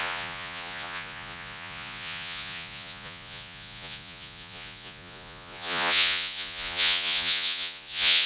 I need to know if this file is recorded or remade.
remade